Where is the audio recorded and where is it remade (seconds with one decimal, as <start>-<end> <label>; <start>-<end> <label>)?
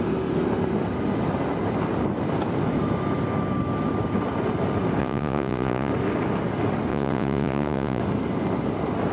0.0-5.0 recorded; 5.0-5.9 remade; 5.9-6.9 recorded; 6.9-8.0 remade; 8.0-9.1 recorded